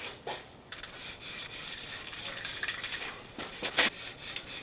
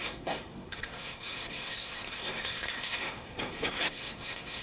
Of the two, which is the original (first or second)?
first